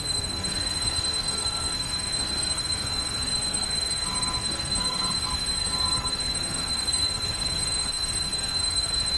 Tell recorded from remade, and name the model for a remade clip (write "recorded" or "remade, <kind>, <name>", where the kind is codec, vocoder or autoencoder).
remade, codec, SNAC